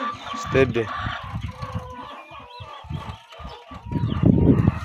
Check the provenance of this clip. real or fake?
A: real